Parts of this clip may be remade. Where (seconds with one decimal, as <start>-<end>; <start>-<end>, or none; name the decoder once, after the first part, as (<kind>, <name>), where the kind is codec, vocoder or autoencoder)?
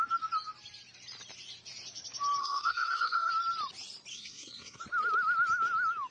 2.4-3.3 (codec, SNAC); 4.1-4.8